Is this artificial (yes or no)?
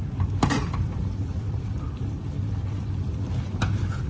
no